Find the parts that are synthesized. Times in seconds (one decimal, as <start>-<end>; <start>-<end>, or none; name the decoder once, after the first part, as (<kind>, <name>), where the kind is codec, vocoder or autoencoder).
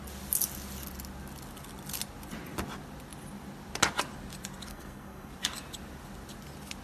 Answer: 4.7-5.3 (codec, SNAC)